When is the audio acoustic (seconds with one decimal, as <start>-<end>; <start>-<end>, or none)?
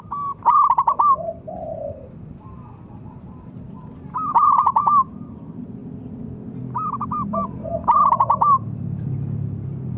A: 4.3-4.8; 5.8-6.6